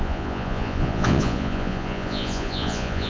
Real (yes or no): no